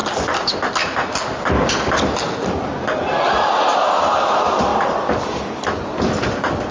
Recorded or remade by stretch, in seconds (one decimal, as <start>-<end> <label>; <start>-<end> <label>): 0.0-4.0 recorded; 4.0-6.7 remade